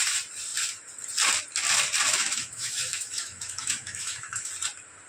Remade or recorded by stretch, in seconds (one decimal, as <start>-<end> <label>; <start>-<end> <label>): 0.0-2.1 recorded; 2.1-4.5 remade; 4.5-5.1 recorded